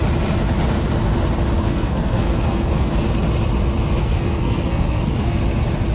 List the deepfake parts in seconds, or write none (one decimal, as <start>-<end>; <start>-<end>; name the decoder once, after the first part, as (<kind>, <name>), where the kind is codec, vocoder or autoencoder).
1.6-2.9 (codec, SNAC); 4.0-5.4